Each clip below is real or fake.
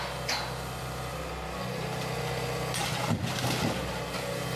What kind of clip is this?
real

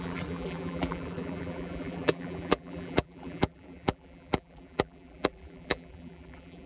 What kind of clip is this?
fake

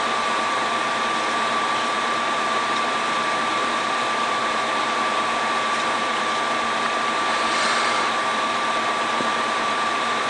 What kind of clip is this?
fake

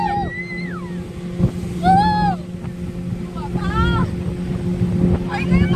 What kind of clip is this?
real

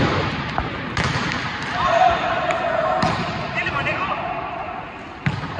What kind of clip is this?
real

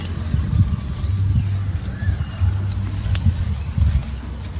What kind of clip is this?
real